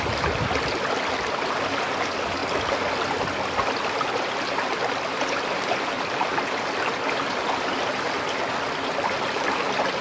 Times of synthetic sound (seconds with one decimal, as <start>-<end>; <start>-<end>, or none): none